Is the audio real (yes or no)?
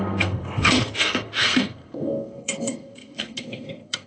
no